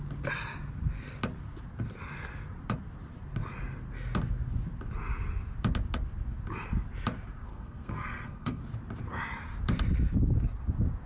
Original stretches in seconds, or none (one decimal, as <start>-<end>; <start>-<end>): 0.0-7.5; 8.6-11.1